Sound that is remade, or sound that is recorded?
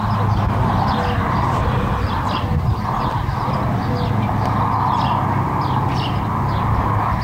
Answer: recorded